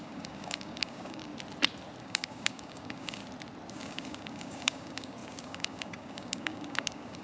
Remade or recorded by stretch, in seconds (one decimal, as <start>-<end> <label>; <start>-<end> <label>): 0.0-1.3 remade; 1.3-2.0 recorded; 2.0-3.2 remade; 3.2-3.7 recorded; 3.7-7.2 remade